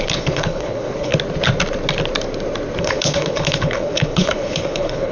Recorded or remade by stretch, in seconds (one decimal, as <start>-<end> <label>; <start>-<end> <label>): 0.0-1.1 remade; 1.1-2.8 recorded; 2.8-5.1 remade